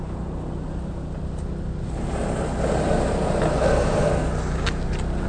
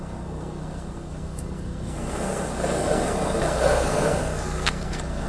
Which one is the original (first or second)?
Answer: first